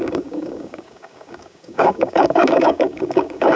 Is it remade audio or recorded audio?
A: remade